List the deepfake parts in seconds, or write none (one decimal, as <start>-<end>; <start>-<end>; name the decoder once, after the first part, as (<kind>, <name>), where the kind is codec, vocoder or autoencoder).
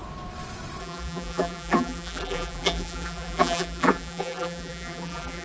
0.8-5.4 (vocoder, BigVGAN v2)